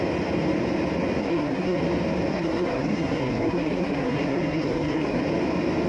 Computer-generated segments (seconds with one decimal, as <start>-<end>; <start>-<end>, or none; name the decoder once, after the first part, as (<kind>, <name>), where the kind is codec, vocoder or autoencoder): 1.2-1.8 (codec, SNAC); 2.3-5.2